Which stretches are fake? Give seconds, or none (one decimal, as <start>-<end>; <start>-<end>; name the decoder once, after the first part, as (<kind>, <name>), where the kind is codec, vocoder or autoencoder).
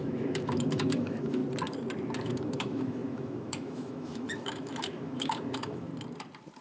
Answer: 0.0-1.4 (autoencoder, DAC-VAE); 2.2-5.9